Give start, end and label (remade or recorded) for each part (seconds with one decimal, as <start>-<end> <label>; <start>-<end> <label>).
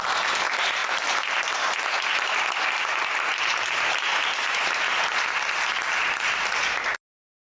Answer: 0.0-7.6 recorded